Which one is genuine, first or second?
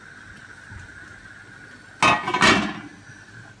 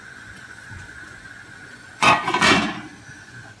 first